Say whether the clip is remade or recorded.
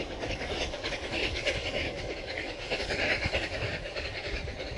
remade